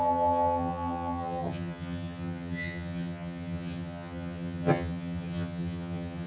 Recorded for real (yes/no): no